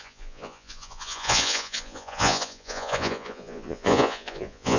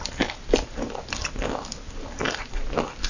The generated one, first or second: first